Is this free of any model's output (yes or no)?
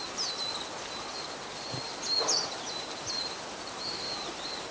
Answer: yes